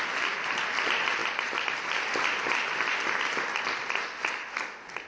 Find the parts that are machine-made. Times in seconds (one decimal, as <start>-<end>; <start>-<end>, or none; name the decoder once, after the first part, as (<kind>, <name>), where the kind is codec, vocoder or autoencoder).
none